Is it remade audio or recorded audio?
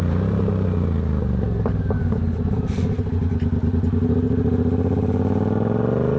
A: recorded